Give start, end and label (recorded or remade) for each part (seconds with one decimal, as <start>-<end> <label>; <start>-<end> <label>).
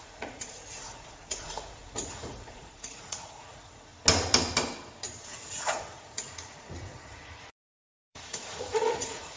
0.0-3.9 remade; 3.9-5.3 recorded; 5.3-9.4 remade